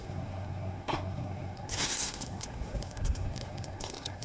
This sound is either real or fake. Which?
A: fake